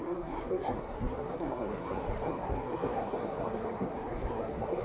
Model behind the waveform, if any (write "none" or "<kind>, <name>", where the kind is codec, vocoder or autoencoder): codec, SNAC